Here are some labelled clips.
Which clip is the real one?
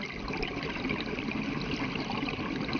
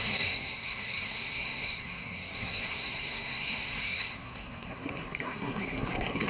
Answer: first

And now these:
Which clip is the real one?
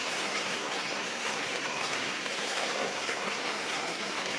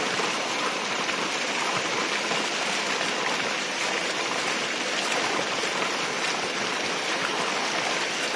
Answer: second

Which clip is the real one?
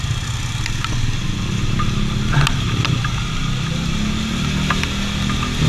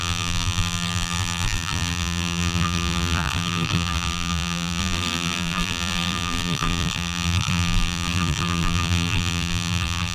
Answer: first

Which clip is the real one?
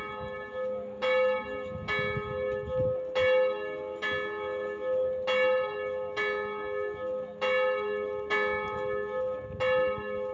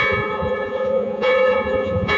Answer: first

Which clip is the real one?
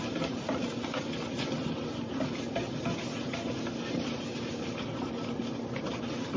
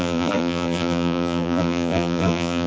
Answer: first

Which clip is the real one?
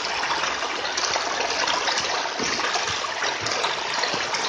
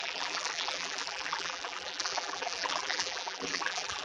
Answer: first